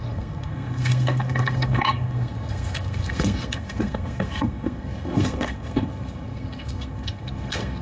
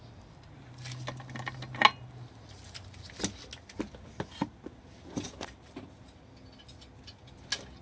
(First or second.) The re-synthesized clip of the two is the first